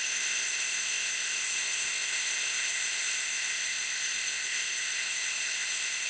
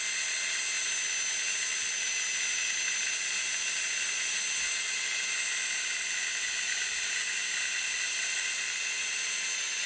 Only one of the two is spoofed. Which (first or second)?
first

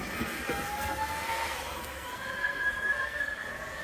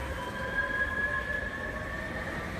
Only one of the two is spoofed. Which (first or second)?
first